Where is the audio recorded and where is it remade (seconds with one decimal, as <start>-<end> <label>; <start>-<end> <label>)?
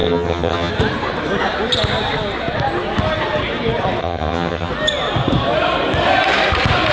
0.0-0.7 remade; 0.7-4.0 recorded; 4.0-4.7 remade; 4.7-6.9 recorded